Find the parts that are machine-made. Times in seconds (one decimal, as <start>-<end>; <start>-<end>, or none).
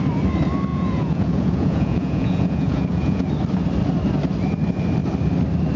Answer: 0.7-3.3